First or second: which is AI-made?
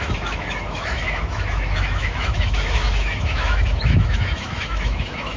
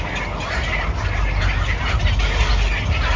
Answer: first